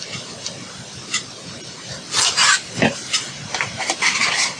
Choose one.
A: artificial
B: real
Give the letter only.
A